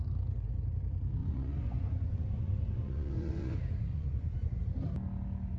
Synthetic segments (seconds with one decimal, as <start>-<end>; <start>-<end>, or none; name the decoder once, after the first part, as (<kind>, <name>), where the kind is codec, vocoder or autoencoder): 1.2-3.5 (vocoder, Vocos); 3.9-4.6